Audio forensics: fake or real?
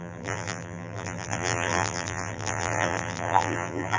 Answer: fake